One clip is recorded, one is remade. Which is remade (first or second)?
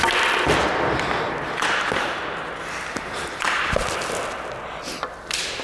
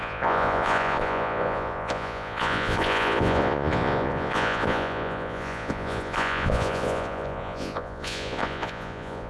second